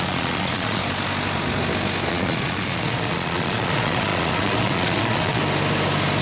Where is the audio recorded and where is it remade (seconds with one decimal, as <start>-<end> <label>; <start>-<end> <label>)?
0.0-0.8 remade; 0.8-2.1 recorded; 2.1-5.4 remade; 5.4-6.2 recorded